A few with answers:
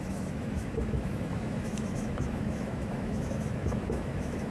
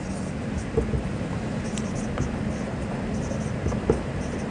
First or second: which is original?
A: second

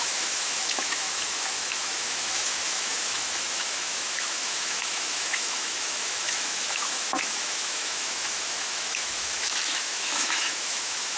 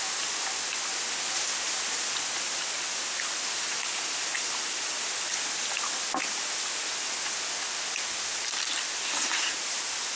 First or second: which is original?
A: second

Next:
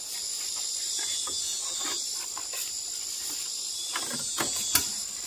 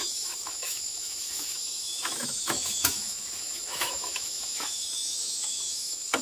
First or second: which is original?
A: first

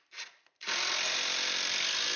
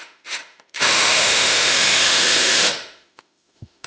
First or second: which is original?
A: first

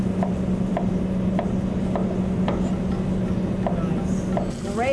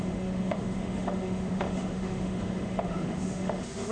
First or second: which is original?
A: first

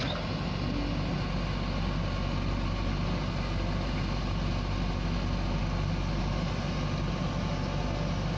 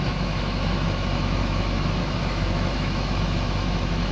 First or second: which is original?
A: first